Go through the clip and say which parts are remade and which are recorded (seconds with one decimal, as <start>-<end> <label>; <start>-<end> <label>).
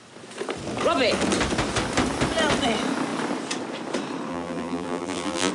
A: 0.0-4.3 recorded; 4.3-5.5 remade